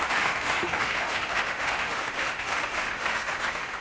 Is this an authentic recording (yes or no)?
no